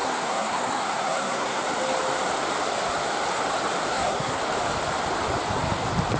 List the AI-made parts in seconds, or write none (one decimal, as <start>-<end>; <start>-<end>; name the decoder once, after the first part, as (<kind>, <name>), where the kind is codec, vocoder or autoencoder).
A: 0.0-1.6 (codec, SNAC); 3.9-4.4